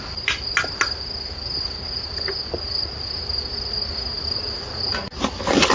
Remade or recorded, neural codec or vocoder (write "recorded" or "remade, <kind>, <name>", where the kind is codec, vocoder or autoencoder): recorded